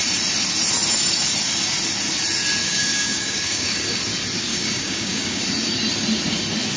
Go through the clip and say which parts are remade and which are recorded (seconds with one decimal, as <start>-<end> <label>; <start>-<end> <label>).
0.0-2.6 recorded; 2.6-4.0 remade; 4.0-4.5 recorded; 4.5-5.4 remade; 5.4-6.8 recorded